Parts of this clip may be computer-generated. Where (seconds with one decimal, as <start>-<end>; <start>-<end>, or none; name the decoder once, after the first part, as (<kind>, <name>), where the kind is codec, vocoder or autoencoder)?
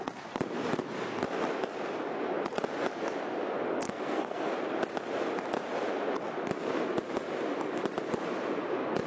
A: 3.8-4.5 (codec, SNAC)